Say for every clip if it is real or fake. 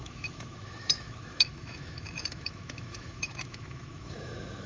fake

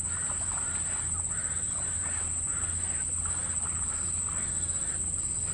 real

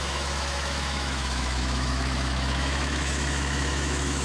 fake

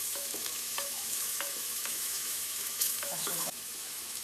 fake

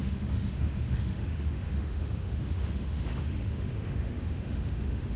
fake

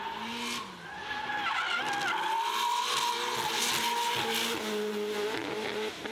real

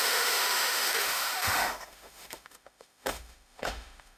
fake